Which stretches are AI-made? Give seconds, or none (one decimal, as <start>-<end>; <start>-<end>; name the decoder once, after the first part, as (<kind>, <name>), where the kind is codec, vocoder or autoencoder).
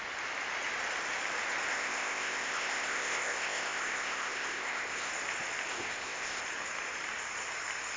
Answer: 1.7-5.1 (codec, ZipCodec); 5.7-6.4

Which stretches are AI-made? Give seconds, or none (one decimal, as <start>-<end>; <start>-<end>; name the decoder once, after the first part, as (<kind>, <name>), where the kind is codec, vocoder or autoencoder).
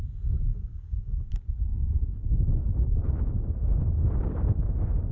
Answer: 0.5-1.2 (codec, DAC)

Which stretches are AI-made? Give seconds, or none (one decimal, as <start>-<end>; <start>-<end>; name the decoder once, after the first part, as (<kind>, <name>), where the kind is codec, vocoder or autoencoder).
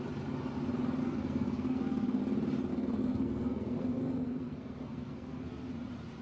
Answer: 1.0-2.2 (codec, SNAC); 2.7-5.7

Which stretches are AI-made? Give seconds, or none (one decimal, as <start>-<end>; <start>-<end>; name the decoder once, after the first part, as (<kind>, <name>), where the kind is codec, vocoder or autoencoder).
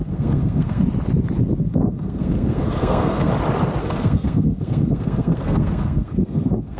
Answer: 0.0-0.8 (codec, SNAC); 1.6-3.3; 3.8-6.8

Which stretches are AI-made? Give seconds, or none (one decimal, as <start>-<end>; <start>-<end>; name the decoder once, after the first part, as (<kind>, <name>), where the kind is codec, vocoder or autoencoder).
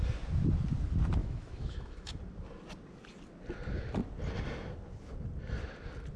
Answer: 1.2-2.2 (autoencoder, DAC-VAE)